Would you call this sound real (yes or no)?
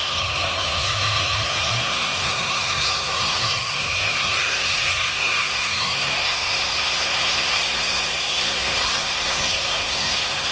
no